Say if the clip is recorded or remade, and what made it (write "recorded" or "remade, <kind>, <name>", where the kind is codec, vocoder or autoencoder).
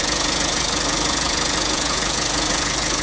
remade, vocoder, Vocos